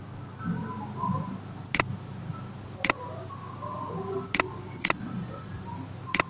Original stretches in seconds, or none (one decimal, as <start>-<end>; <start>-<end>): 0.0-4.8; 5.5-6.3